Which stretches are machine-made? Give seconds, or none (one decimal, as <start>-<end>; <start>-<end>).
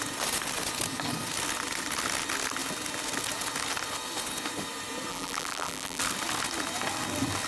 5.1-6.0